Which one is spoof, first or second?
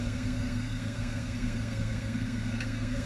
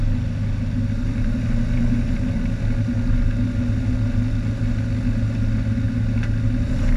first